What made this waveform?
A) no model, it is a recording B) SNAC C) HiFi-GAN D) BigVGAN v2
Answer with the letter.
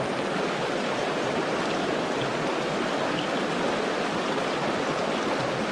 A